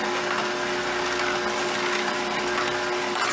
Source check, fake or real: real